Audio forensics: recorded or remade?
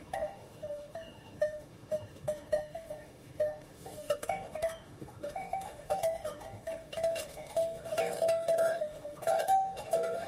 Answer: remade